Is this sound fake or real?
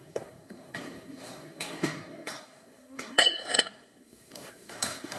fake